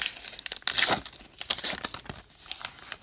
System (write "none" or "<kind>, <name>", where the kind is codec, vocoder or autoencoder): none